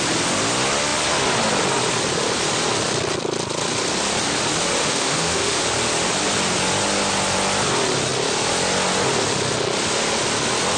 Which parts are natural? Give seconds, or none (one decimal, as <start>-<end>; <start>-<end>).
0.0-4.8; 5.6-10.8